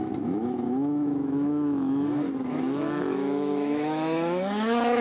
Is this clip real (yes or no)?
no